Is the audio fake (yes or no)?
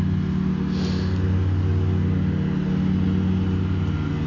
no